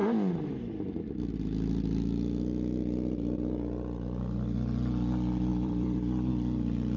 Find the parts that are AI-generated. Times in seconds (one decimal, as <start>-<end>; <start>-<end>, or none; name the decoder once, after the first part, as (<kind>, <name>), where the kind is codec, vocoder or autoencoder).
5.5-6.3 (vocoder, BigVGAN v2)